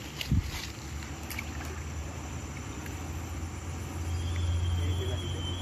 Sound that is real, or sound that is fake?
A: real